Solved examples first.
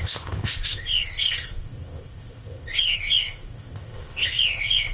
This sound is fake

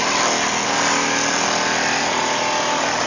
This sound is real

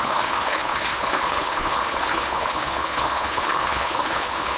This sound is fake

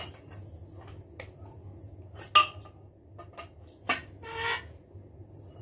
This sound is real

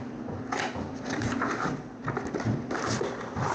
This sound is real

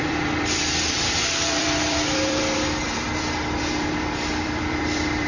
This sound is fake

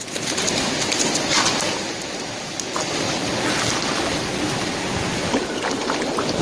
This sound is real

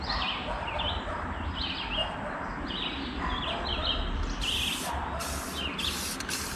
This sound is real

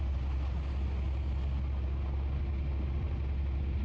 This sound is real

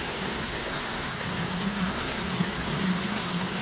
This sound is fake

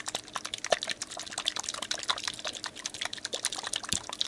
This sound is real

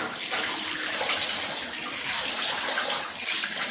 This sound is real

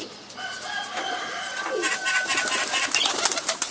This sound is real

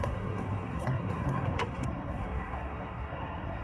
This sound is fake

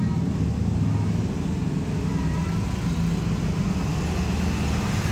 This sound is real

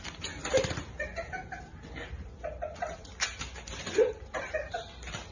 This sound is real